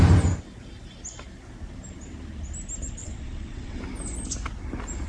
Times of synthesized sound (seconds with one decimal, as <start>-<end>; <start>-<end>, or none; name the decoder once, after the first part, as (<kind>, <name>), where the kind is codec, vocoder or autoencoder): 3.0-3.8 (vocoder, WaveNeXt)